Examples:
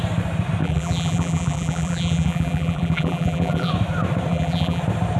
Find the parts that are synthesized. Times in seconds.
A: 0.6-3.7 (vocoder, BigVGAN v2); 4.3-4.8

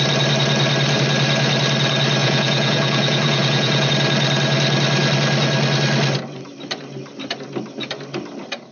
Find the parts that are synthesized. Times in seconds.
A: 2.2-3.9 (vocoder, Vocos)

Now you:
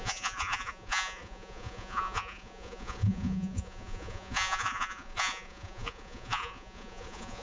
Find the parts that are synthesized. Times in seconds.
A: 0.0-7.4 (vocoder, Vocos)

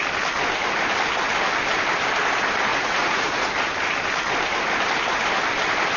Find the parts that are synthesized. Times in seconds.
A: 2.7-3.5 (vocoder, Vocos)

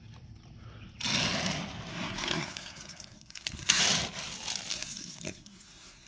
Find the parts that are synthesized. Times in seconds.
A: 1.9-3.8 (codec, SNAC); 4.7-6.1